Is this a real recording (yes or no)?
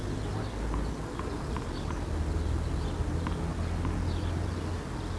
yes